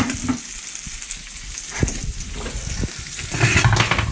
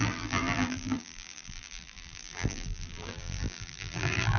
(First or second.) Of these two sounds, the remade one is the second